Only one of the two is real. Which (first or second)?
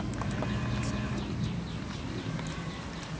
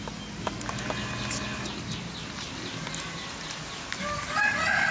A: second